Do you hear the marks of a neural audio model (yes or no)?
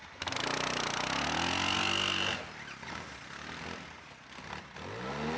no